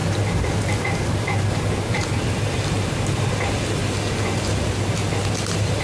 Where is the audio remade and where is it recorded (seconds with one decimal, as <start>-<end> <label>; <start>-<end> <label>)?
0.0-1.9 recorded; 1.9-3.8 remade; 3.8-5.8 recorded